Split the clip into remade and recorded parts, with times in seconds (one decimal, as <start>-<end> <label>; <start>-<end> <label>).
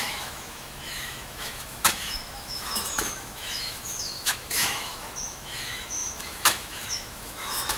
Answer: 0.0-7.8 remade